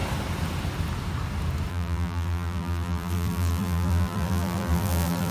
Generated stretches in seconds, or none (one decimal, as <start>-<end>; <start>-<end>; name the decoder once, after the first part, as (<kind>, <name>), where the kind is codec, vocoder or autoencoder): 1.7-5.3 (vocoder, BigVGAN v2)